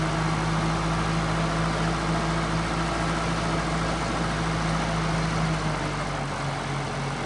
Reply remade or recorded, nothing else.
recorded